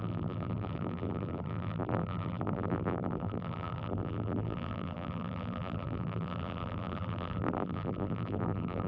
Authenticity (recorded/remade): remade